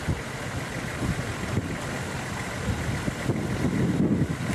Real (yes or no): yes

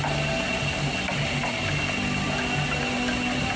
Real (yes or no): yes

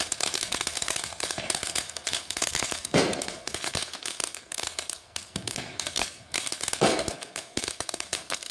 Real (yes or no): no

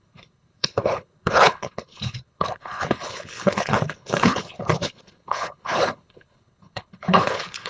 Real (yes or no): no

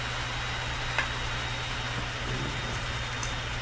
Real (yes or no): yes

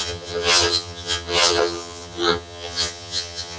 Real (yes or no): no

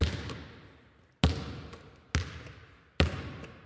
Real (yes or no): yes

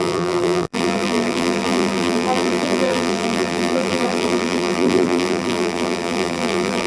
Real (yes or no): no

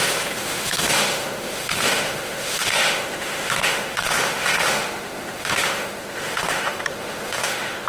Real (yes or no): no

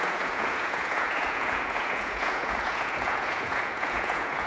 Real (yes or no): no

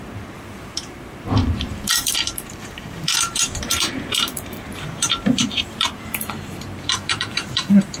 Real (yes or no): no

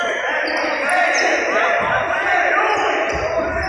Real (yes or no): yes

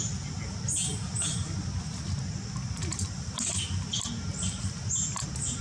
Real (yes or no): yes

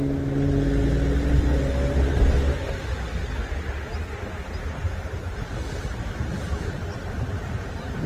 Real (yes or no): yes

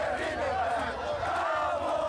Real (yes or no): yes